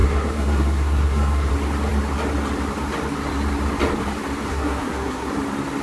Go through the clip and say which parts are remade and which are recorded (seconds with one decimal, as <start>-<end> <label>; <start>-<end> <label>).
0.0-1.5 remade; 1.5-4.5 recorded; 4.5-5.3 remade; 5.3-5.8 recorded